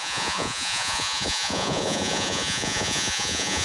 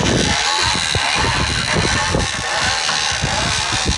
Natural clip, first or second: second